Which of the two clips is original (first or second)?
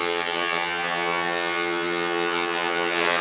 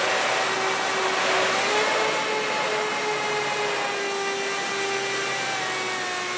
second